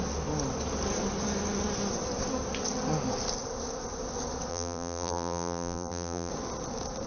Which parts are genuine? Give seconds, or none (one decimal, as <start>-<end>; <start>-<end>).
0.0-4.5; 6.3-7.1

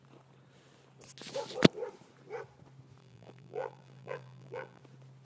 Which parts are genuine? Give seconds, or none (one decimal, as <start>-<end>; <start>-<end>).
0.0-3.0; 4.8-5.2

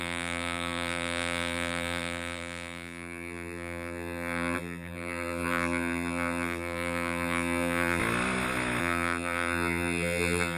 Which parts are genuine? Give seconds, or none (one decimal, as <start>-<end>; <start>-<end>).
8.0-8.8